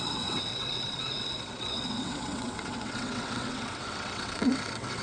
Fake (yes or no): yes